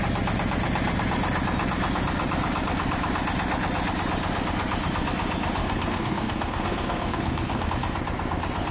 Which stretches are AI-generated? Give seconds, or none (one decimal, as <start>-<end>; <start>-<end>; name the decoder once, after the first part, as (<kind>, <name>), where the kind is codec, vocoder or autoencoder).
5.6-7.7 (codec, SNAC)